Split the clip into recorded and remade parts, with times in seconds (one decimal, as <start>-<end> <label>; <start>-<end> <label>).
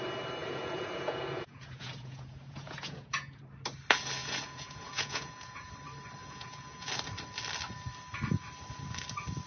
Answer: 0.0-0.4 recorded; 0.4-3.4 remade; 3.4-4.2 recorded; 4.2-5.7 remade; 5.7-6.2 recorded; 6.2-6.9 remade; 6.9-9.5 recorded